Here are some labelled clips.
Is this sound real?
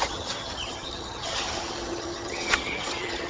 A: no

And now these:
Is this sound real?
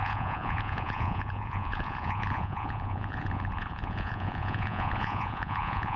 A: no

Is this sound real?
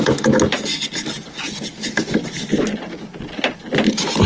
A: yes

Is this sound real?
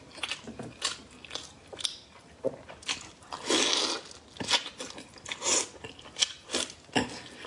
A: yes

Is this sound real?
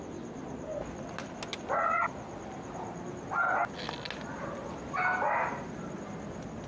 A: yes